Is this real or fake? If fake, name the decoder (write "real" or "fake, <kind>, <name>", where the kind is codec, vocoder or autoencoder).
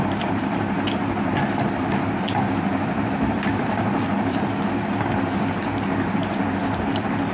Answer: fake, vocoder, BigVGAN v2